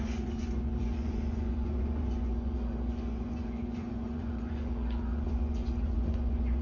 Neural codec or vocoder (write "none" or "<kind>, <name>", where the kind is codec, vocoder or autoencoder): vocoder, Vocos